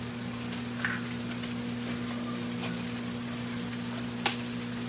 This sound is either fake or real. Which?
real